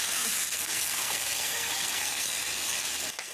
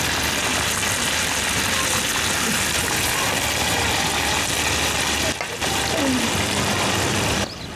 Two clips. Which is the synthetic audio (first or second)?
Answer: first